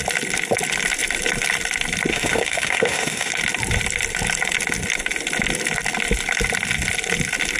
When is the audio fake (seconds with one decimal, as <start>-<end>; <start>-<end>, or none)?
2.1-3.3